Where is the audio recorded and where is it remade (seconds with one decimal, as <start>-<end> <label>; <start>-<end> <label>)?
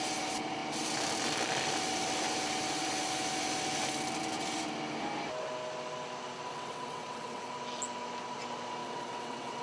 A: 0.0-6.5 recorded; 6.5-7.5 remade; 7.5-8.8 recorded; 8.8-9.6 remade